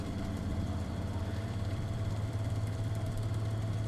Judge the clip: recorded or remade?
remade